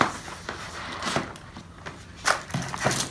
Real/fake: real